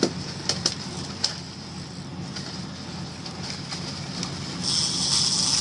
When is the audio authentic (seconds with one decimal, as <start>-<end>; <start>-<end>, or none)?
0.0-5.6